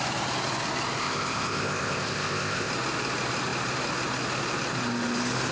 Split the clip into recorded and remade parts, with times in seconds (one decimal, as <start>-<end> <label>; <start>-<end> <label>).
0.0-1.0 recorded; 1.0-2.7 remade; 2.7-5.5 recorded